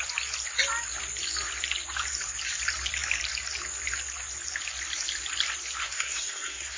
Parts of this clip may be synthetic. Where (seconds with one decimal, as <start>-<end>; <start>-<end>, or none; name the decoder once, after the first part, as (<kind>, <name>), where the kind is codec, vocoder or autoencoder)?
5.8-6.8 (codec, SNAC)